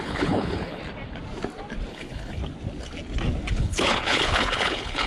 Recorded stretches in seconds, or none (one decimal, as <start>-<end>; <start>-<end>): 0.8-1.9; 2.4-3.5

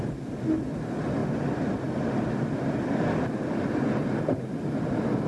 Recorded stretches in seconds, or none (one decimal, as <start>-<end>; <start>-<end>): 0.0-5.3

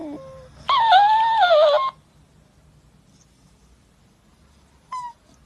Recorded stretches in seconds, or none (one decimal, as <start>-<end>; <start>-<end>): 0.0-3.3

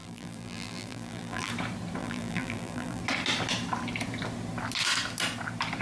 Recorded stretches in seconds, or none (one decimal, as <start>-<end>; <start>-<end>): 1.5-2.0; 3.0-5.8

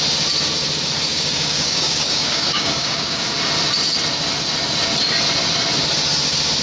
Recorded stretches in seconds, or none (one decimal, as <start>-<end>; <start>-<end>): 0.0-1.1; 3.2-6.6

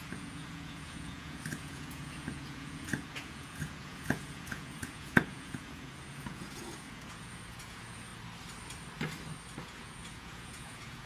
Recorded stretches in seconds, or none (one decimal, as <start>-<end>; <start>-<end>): 8.1-9.6

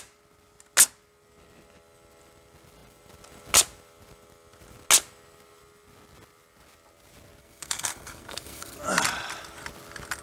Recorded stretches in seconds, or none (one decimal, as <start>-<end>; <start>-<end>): 0.0-7.4; 8.8-10.2